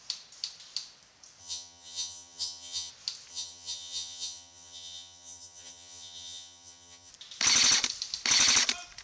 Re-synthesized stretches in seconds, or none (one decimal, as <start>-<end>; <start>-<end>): 1.4-2.9; 3.3-7.1